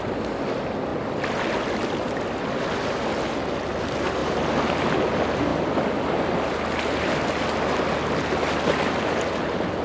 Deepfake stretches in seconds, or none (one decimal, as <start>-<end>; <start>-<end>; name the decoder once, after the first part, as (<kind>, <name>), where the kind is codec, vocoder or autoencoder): none